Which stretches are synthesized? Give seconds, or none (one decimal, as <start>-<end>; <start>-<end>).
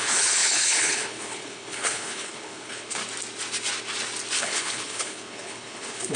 0.0-3.0; 4.4-6.2